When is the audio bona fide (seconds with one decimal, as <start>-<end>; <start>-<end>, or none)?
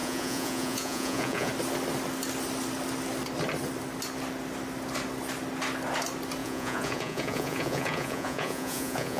1.5-6.4